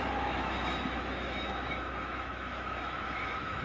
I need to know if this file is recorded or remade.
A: remade